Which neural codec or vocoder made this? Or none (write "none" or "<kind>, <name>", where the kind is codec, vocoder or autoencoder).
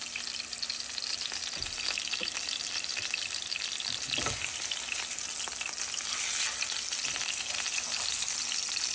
none